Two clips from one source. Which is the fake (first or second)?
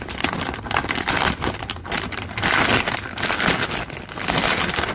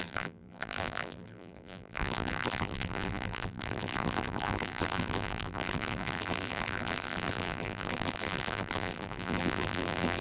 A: second